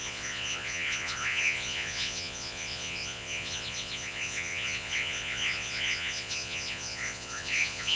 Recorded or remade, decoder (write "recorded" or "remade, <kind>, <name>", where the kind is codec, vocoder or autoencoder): remade, vocoder, Vocos